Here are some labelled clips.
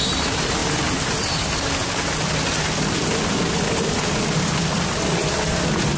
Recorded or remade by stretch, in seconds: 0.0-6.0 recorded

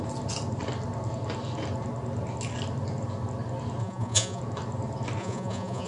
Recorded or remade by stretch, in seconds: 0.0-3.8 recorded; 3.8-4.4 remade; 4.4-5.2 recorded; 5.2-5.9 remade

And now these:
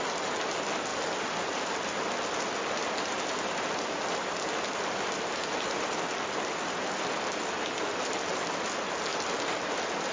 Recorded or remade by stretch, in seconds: 0.0-10.1 recorded

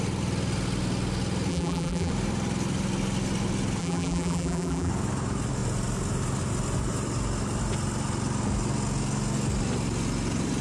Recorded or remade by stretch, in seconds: 0.0-1.5 recorded; 1.5-2.1 remade; 2.1-3.8 recorded; 3.8-4.9 remade; 4.9-10.6 recorded

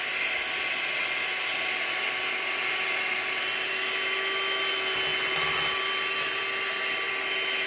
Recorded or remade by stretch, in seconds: 0.0-7.7 recorded